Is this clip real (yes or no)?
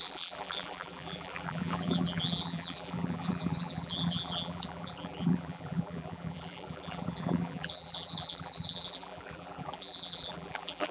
no